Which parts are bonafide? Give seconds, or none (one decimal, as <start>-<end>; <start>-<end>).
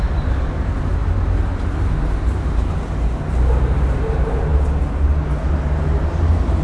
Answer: 0.0-6.6